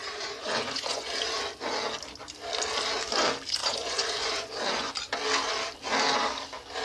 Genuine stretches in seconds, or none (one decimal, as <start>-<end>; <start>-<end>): 1.1-3.6; 4.9-6.8

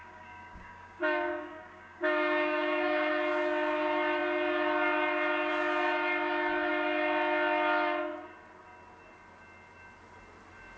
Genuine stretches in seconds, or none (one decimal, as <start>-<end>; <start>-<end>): 3.1-10.8

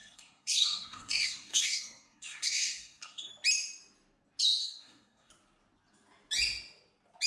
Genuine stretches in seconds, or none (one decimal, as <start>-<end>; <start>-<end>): 3.3-4.6; 5.3-7.3

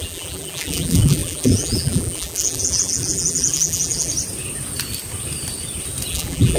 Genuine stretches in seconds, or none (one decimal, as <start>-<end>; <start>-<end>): 4.1-6.1

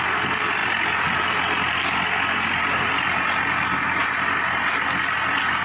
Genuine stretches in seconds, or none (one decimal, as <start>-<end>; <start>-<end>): 0.0-5.6

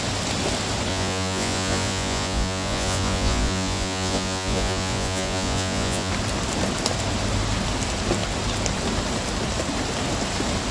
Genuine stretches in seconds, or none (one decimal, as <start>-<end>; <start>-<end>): 0.0-0.9; 6.1-10.7

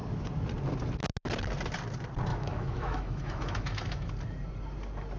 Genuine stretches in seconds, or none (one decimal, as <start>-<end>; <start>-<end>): 0.0-2.3; 4.1-5.2